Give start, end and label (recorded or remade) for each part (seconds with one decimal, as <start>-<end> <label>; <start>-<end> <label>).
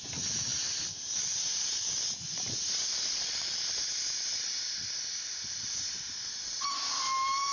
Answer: 0.0-7.5 recorded